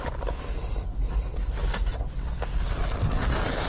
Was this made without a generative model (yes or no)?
yes